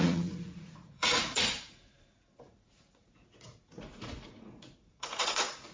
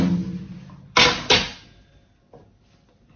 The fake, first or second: first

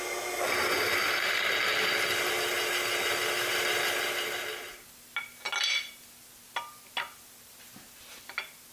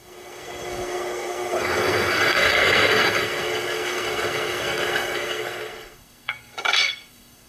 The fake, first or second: second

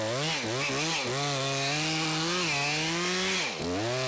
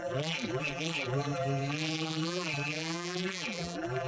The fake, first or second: second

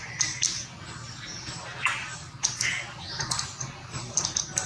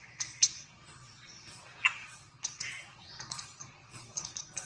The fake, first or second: second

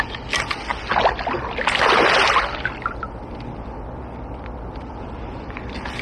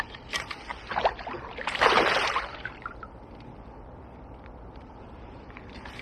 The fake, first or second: second